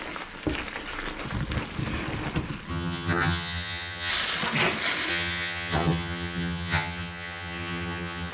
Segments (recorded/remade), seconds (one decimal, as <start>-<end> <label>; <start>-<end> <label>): 0.0-2.7 recorded; 2.7-4.1 remade; 4.1-5.1 recorded; 5.1-8.3 remade